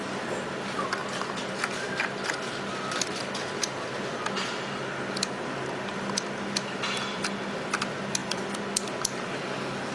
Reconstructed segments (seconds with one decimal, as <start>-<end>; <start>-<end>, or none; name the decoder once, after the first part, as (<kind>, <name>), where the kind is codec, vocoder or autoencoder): none

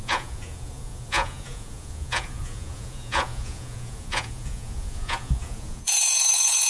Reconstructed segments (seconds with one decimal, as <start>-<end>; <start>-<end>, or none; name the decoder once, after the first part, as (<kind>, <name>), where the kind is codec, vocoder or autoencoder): 0.0-6.7 (vocoder, Vocos)

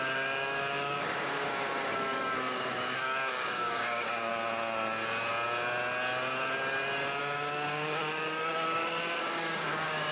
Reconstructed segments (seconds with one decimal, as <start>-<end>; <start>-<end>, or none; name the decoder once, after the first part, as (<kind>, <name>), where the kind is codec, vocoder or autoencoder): 0.0-4.3 (codec, DAC); 7.2-10.1

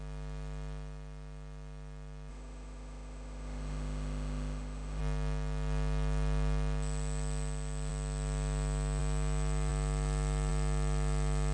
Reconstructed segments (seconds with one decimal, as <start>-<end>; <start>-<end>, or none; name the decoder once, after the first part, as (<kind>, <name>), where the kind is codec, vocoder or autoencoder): 2.3-5.0 (autoencoder, DAC-VAE)

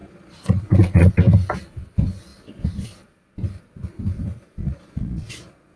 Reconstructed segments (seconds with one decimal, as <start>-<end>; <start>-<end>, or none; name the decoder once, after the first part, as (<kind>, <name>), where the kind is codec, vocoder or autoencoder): 0.0-1.1 (vocoder, Vocos); 4.6-5.8